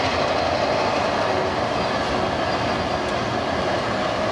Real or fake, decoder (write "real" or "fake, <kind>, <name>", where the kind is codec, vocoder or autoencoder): real